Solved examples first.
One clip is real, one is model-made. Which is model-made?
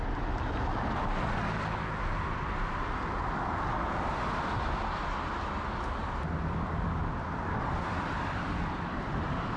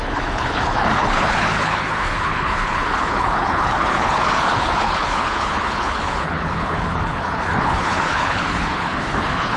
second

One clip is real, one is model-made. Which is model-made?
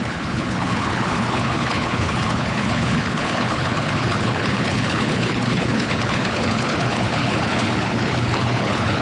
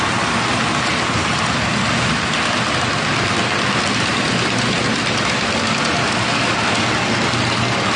first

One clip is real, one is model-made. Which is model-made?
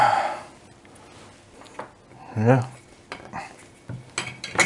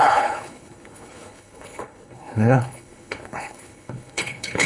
second